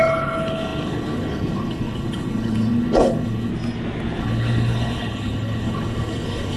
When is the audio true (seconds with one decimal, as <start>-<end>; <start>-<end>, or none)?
3.5-4.2